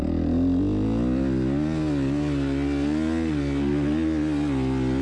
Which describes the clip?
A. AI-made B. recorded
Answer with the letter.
B